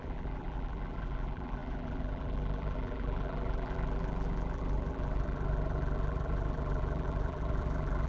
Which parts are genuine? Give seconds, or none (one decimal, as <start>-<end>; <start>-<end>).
none